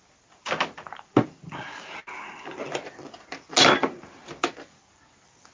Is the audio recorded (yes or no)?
yes